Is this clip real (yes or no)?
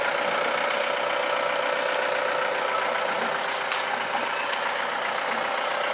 yes